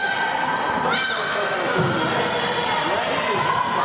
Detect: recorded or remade recorded